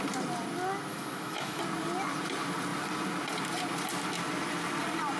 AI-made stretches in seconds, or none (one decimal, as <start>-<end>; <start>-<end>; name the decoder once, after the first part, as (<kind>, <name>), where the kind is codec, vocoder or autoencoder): 0.9-1.6 (autoencoder, DAC-VAE)

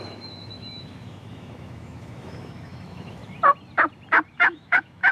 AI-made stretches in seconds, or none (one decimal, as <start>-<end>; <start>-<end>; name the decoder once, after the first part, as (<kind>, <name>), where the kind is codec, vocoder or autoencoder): 0.0-3.2 (autoencoder, DAC-VAE); 4.3-5.1

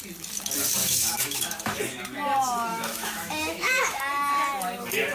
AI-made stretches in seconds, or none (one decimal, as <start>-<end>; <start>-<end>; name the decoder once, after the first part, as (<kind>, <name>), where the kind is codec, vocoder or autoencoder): 0.8-1.8 (autoencoder, DAC-VAE); 2.7-4.0

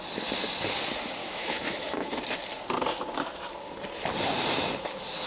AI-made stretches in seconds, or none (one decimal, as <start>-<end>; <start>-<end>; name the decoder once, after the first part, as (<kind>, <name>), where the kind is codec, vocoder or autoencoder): 1.2-2.1 (autoencoder, DAC-VAE)

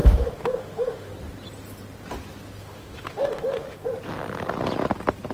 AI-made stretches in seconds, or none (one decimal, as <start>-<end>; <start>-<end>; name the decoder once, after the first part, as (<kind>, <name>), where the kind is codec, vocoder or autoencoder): 0.0-1.1 (autoencoder, DAC-VAE); 2.6-3.9

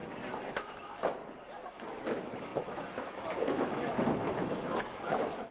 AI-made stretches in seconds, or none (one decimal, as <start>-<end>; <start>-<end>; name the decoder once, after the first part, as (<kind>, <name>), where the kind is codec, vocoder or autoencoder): 0.5-1.2 (autoencoder, DAC-VAE); 1.7-5.5

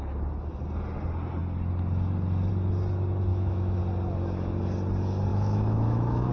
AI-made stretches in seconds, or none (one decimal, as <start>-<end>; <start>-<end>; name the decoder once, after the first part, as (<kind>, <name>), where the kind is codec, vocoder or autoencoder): 3.3-3.8 (autoencoder, DAC-VAE); 5.3-6.3

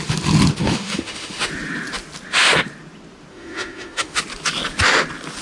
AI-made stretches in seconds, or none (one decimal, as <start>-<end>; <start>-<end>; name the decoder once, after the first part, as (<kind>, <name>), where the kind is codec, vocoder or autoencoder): 0.6-1.5 (autoencoder, DAC-VAE); 3.3-4.2